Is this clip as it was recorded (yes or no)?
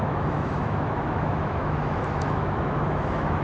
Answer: no